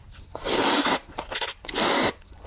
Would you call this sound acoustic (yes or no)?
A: yes